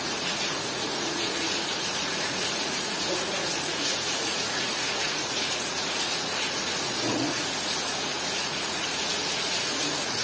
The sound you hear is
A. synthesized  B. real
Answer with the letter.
A